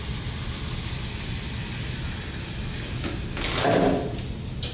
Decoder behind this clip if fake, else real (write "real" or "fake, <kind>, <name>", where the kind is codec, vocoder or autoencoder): real